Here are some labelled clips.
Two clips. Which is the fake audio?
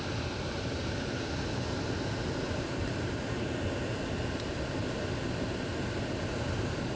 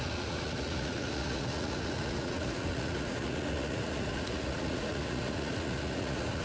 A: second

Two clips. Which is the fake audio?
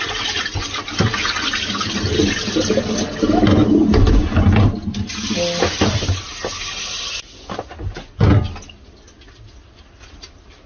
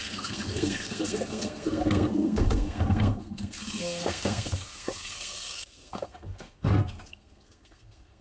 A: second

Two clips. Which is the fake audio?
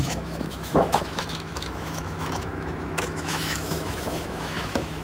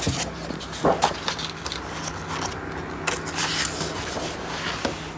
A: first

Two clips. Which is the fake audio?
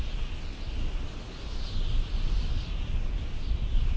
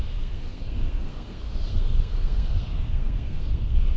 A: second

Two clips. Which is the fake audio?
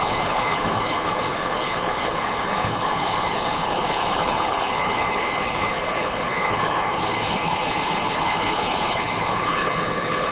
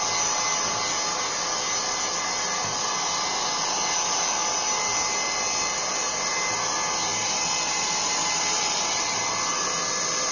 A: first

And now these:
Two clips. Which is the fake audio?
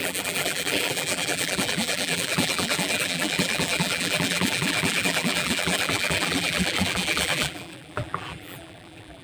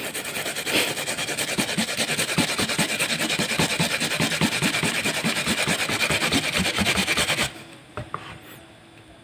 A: first